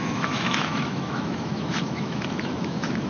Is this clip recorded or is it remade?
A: remade